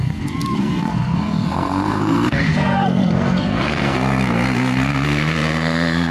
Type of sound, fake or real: fake